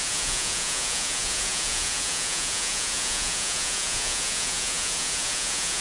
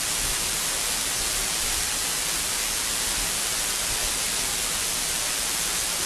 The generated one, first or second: first